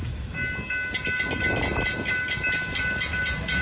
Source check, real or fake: real